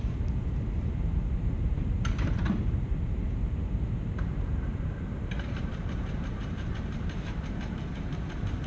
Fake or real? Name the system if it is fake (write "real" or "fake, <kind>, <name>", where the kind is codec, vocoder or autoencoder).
fake, vocoder, BigVGAN v2